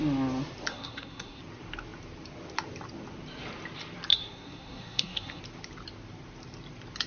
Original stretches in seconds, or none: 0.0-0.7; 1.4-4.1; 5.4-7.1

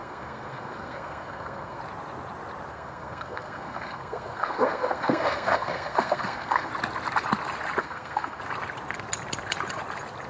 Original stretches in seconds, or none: 1.8-2.7; 6.7-7.8; 8.4-10.3

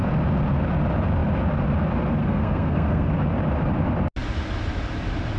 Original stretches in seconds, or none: 0.0-2.2; 3.1-5.4

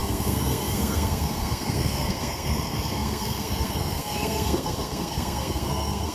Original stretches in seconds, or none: none